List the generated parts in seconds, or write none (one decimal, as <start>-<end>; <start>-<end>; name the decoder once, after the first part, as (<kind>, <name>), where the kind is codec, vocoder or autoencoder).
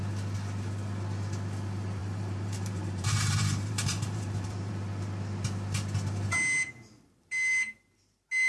2.0-4.7 (vocoder, BigVGAN v2)